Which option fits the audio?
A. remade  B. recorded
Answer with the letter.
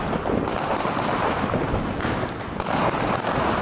B